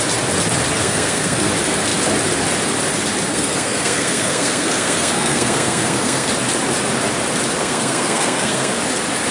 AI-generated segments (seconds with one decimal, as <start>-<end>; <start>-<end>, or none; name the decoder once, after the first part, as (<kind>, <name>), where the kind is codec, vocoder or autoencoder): 0.8-1.5 (codec, SNAC); 3.3-6.3; 7.6-8.8